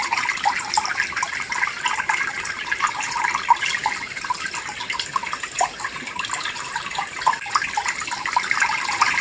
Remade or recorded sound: recorded